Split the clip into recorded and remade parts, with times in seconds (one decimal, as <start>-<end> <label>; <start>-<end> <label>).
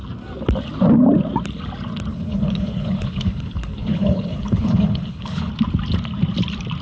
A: 0.0-2.1 recorded; 2.1-5.5 remade; 5.5-6.8 recorded